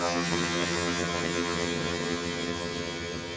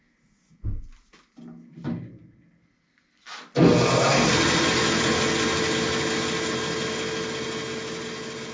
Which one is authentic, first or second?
second